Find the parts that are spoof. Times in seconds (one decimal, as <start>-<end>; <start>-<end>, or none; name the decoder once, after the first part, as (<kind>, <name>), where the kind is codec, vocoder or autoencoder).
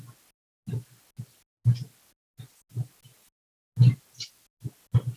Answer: none